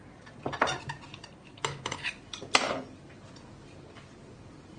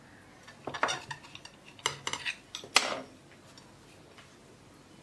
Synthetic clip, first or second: first